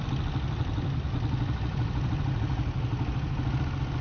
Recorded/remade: recorded